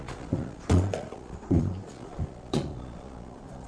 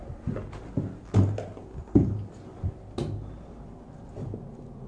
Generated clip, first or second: first